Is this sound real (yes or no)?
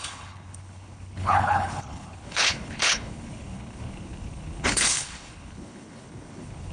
no